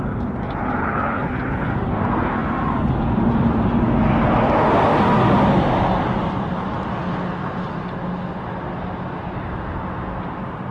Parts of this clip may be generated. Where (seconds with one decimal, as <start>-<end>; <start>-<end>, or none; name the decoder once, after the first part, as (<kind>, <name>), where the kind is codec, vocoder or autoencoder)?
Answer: 0.8-1.7 (codec, HILCodec)